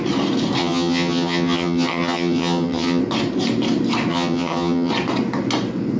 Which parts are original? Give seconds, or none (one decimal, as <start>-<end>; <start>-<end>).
0.0-0.6; 3.0-4.1; 4.9-6.0